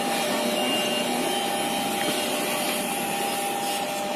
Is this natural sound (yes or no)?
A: yes